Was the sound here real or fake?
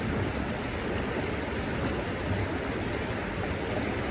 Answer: real